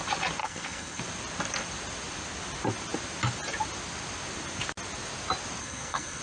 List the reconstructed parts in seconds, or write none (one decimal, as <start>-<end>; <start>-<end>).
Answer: 0.4-1.0; 5.6-6.2